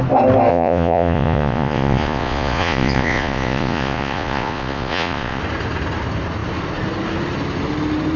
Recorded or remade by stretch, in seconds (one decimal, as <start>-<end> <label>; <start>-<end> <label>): 0.0-0.5 recorded; 0.5-5.4 remade; 5.4-8.2 recorded